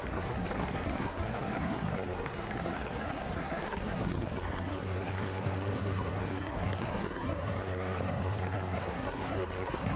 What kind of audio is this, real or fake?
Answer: fake